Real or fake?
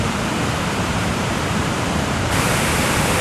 fake